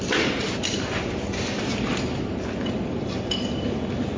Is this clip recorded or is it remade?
recorded